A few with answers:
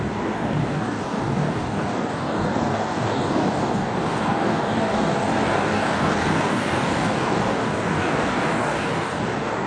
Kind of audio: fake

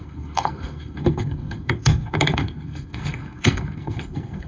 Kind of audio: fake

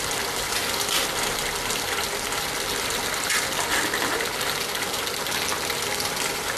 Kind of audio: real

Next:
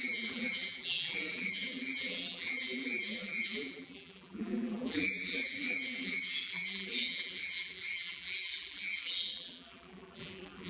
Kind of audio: fake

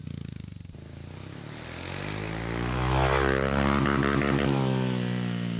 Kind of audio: real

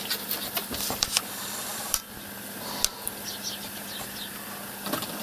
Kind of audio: real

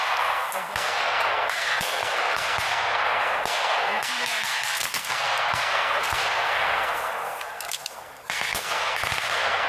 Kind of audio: fake